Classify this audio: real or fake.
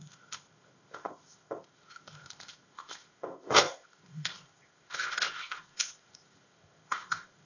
fake